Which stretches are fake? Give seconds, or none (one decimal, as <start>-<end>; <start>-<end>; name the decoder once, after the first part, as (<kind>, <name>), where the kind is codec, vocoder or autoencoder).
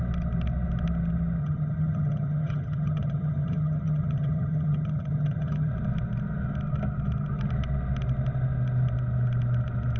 1.4-5.7 (vocoder, HiFi-GAN)